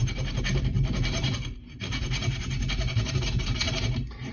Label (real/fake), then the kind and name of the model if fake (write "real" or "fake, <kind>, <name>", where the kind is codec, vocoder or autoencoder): fake, vocoder, BigVGAN v2